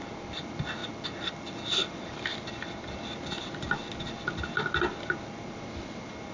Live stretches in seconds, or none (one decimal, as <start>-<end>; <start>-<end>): 0.0-6.3